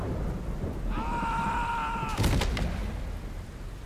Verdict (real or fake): real